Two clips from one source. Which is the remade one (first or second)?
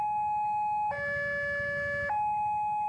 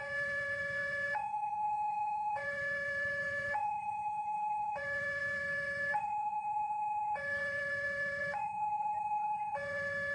second